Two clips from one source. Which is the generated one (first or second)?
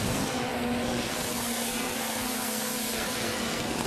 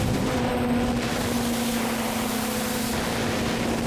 first